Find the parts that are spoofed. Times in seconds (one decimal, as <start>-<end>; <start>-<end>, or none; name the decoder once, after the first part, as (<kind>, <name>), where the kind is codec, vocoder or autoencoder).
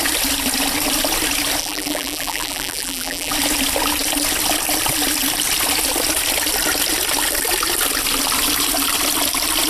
1.6-3.3 (vocoder, BigVGAN v2)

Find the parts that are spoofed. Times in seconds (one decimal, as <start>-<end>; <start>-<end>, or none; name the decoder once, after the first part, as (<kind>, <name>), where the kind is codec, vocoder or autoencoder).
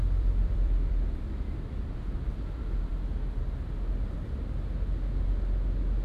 0.0-1.2 (vocoder, BigVGAN v2)